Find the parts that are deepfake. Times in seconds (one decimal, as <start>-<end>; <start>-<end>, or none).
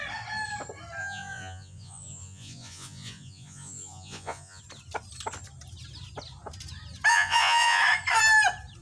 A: 1.0-4.6; 7.1-7.8